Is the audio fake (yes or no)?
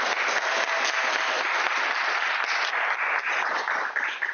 no